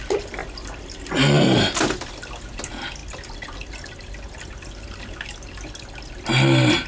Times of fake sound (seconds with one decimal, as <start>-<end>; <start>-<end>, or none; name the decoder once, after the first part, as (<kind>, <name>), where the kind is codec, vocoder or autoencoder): none

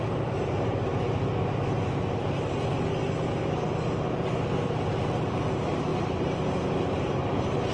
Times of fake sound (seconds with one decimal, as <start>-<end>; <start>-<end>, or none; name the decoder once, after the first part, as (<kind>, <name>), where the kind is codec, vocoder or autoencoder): 0.0-0.9 (vocoder, BigVGAN v2); 5.5-7.7

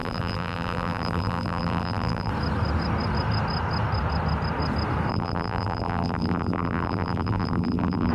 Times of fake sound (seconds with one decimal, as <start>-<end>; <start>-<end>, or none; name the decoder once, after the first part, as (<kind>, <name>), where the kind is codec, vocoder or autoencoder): 0.0-2.3 (vocoder, BigVGAN v2); 5.1-8.1

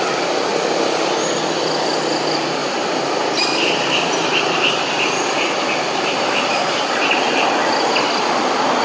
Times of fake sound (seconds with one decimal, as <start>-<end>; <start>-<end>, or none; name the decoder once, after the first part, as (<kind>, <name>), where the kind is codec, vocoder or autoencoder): 2.6-6.8 (vocoder, BigVGAN v2)

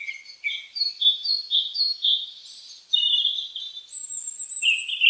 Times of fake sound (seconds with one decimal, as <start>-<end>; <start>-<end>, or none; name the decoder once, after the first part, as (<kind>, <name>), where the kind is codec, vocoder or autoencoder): 2.1-4.4 (vocoder, BigVGAN v2)

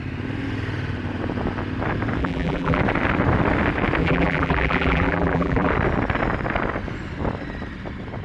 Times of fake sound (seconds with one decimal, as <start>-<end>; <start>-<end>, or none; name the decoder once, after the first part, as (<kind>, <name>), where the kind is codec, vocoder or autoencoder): 2.2-2.8 (vocoder, BigVGAN v2); 4.0-5.7

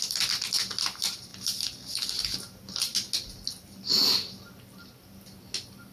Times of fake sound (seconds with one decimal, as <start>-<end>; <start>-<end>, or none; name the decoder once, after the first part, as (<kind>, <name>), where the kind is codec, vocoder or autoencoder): none